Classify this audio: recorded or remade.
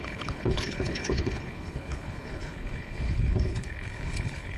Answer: remade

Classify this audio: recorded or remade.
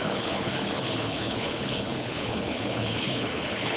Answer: remade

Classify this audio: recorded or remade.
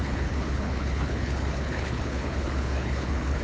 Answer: remade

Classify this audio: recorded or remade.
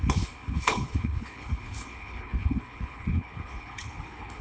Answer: remade